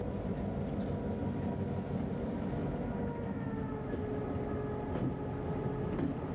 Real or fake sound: real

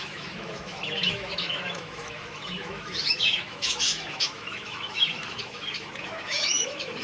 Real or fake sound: fake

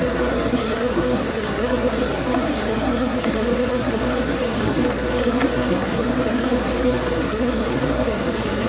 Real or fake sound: fake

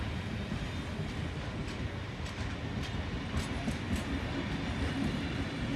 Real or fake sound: real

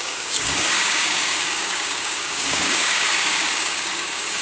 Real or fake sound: fake